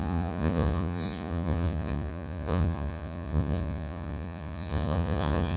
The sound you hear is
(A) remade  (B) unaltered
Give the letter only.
A